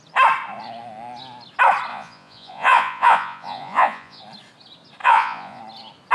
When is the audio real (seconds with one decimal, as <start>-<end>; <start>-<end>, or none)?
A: 0.0-1.9; 4.2-5.0; 5.6-6.1